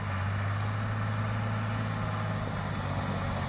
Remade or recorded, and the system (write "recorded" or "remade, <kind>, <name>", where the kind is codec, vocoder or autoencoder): recorded